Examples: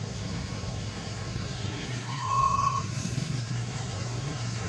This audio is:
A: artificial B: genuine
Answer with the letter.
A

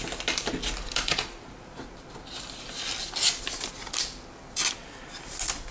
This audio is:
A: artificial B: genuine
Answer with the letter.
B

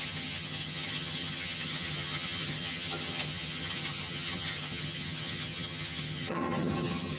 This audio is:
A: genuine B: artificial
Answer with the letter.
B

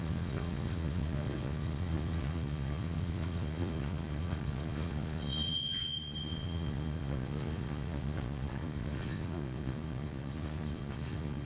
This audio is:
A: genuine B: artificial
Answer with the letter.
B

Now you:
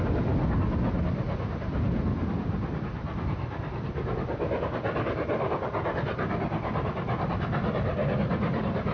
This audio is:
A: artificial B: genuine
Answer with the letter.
B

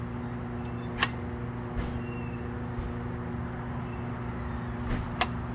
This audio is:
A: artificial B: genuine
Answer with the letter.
B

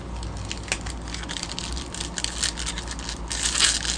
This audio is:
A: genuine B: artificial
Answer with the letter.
A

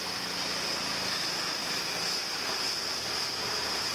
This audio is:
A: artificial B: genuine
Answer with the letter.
B